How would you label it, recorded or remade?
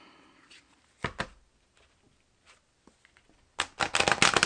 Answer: recorded